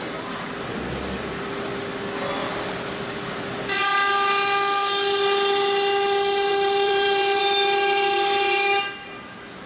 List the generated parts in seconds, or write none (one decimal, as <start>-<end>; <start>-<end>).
2.4-2.9; 6.5-7.4